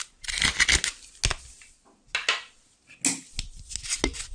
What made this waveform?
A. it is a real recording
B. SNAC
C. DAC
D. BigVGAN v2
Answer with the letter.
A